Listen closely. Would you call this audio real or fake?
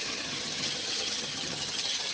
fake